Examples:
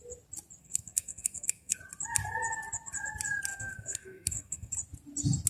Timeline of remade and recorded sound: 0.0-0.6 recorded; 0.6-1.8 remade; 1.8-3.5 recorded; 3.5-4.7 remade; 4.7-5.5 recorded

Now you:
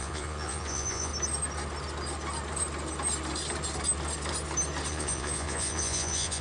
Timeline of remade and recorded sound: 0.0-1.1 remade; 1.1-4.9 recorded; 4.9-6.4 remade

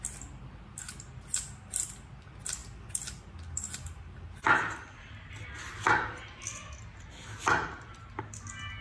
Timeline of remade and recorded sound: 0.0-8.8 recorded

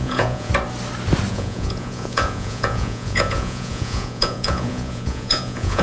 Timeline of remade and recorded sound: 0.0-0.5 remade; 0.5-1.3 recorded; 1.3-5.8 remade

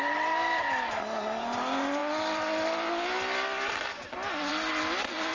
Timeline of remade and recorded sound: 0.0-5.3 recorded

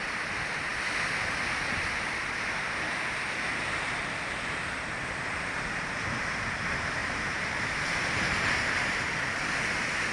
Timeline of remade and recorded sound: 0.0-10.1 recorded

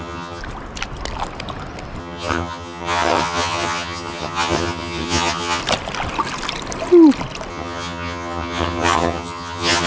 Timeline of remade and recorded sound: 0.0-0.4 remade; 0.4-2.0 recorded; 2.0-5.6 remade; 5.6-7.5 recorded; 7.5-9.9 remade